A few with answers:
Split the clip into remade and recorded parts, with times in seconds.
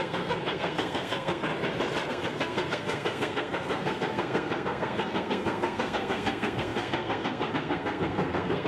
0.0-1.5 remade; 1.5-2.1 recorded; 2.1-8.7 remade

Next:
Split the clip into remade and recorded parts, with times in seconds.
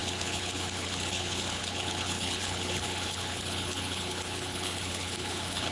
0.0-5.7 remade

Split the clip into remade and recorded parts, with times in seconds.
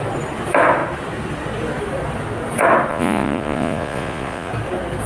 0.0-2.9 recorded; 2.9-4.5 remade; 4.5-5.1 recorded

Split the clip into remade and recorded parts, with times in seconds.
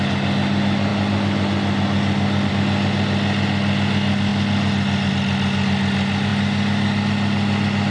0.0-7.9 recorded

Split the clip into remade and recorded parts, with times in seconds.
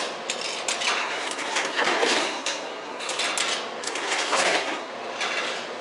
0.0-1.0 recorded; 1.0-3.2 remade; 3.2-3.8 recorded; 3.8-4.9 remade; 4.9-5.8 recorded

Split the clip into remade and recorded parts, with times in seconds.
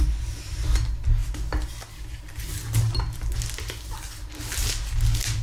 0.0-5.4 recorded